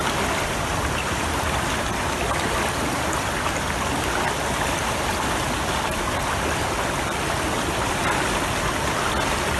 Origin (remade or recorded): recorded